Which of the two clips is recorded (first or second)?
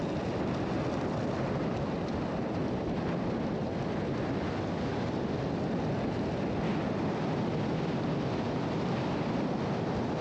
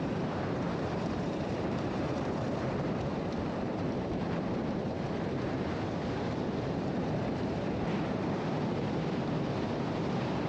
first